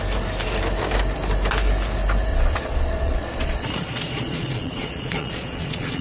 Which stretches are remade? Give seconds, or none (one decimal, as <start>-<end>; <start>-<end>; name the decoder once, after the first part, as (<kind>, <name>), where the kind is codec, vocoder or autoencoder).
2.3-6.0 (vocoder, Vocos)

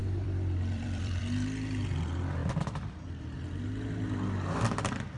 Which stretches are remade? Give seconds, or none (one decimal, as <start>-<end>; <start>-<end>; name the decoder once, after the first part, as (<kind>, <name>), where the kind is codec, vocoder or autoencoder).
0.0-1.2 (vocoder, BigVGAN v2)

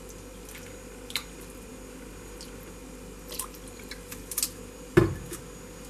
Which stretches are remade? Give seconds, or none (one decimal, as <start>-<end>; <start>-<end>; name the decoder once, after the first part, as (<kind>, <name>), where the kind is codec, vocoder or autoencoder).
none

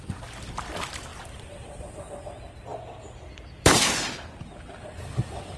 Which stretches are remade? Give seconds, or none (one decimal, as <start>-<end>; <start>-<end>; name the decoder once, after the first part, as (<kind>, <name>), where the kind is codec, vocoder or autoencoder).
0.0-5.6 (vocoder, BigVGAN v2)

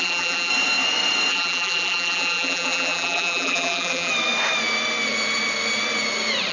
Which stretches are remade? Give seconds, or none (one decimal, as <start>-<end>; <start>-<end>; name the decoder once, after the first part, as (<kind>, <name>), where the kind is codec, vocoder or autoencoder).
0.0-0.5 (vocoder, BigVGAN v2); 1.3-4.1

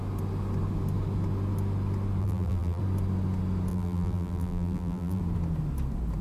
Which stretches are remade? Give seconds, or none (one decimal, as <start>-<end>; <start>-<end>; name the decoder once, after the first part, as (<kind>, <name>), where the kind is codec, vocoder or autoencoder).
2.2-2.8 (vocoder, BigVGAN v2); 3.7-5.2